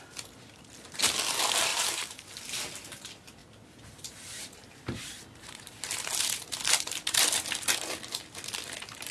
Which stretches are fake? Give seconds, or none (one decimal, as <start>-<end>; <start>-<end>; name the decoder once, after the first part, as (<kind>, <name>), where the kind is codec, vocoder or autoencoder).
1.7-2.3 (vocoder, BigVGAN v2); 3.4-7.3